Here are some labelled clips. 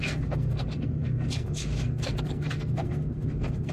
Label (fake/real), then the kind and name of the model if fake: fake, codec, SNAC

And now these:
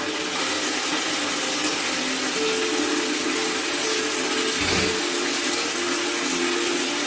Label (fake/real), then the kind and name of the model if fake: real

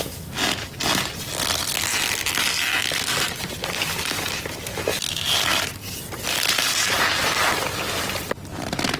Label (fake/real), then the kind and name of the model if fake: real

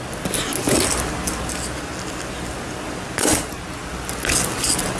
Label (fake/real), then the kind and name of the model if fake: real